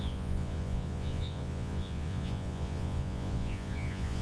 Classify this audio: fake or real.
fake